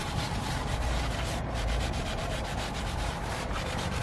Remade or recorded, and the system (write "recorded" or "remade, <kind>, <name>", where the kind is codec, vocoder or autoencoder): remade, vocoder, BigVGAN v2